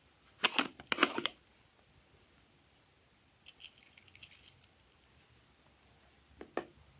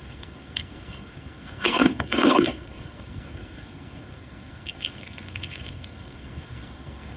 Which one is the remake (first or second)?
second